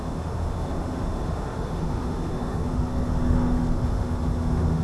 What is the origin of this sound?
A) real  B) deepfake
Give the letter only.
B